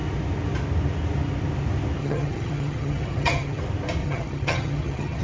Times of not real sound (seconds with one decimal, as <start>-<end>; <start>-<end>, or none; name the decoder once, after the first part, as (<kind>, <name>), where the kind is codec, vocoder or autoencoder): 2.0-3.6 (vocoder, HiFi-GAN); 4.0-5.2